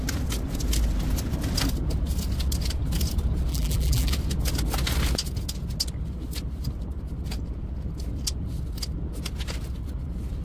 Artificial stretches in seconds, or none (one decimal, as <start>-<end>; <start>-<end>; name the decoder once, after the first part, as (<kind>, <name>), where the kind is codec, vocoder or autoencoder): 3.5-4.1 (vocoder, BigVGAN v2)